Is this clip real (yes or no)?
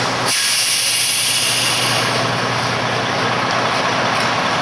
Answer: yes